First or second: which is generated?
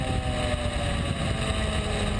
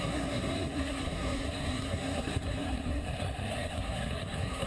second